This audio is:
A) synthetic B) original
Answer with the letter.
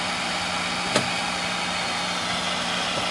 B